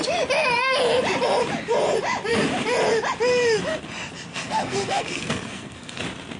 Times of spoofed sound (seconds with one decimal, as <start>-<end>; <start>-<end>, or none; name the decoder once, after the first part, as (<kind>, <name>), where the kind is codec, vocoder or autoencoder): 4.3-6.0 (codec, SNAC)